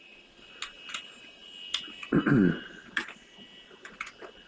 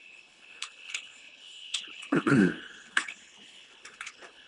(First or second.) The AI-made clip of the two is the second